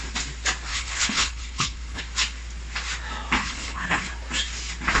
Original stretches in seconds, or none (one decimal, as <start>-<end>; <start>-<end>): 0.0-0.7; 2.0-3.4; 4.1-5.0